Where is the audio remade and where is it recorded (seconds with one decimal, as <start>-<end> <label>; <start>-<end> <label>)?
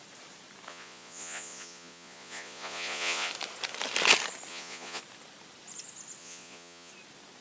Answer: 0.0-0.7 recorded; 0.7-3.3 remade; 3.3-4.5 recorded; 4.5-5.0 remade; 5.0-6.2 recorded; 6.2-6.9 remade; 6.9-7.4 recorded